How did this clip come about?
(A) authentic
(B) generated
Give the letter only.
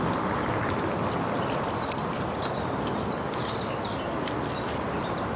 A